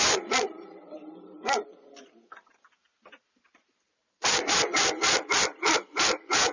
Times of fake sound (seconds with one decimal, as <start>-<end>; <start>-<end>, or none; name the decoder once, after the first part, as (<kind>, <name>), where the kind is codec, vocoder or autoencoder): 0.0-1.0 (vocoder, BigVGAN v2); 1.7-6.5